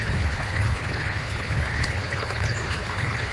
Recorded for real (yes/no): no